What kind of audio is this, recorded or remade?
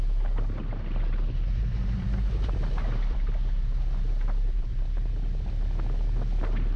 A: recorded